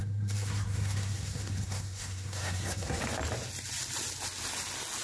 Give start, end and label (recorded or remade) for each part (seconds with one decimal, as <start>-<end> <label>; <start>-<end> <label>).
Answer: 0.0-3.0 remade; 3.0-5.0 recorded